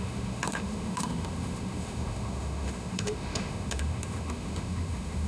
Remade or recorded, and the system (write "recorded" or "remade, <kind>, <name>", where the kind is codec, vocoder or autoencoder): remade, autoencoder, DAC-VAE